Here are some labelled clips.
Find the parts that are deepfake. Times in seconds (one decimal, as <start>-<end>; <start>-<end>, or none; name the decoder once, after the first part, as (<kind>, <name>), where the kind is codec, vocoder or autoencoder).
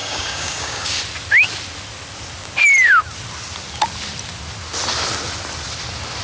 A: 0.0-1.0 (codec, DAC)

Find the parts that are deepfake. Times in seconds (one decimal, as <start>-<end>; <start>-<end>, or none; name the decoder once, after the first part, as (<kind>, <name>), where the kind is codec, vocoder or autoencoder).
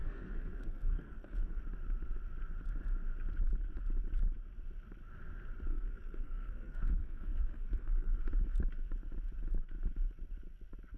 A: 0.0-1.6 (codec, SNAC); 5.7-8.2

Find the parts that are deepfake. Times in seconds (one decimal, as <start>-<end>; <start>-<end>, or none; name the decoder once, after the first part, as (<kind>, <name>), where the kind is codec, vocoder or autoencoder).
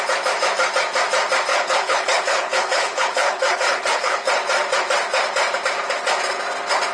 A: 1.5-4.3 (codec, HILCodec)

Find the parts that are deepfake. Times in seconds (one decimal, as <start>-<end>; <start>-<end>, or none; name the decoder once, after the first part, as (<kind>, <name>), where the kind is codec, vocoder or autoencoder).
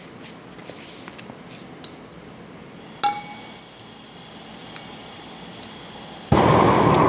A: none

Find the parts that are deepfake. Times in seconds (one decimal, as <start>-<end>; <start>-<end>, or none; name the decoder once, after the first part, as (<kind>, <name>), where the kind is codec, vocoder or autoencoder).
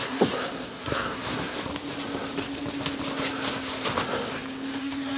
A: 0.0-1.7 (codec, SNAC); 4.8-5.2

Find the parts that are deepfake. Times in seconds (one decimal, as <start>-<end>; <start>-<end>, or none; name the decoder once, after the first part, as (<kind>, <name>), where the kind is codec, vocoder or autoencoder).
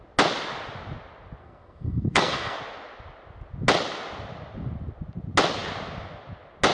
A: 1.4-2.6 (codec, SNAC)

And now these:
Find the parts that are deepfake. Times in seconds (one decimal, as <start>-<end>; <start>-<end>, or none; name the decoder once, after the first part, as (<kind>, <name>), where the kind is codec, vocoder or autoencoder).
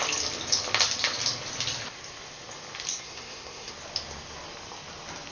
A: 2.9-3.7 (codec, SNAC)